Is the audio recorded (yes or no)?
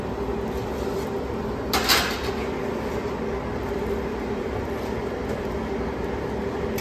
yes